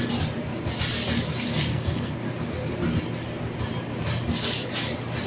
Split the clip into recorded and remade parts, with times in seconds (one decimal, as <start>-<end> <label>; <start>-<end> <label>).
0.0-1.7 recorded; 1.7-2.2 remade; 2.2-5.3 recorded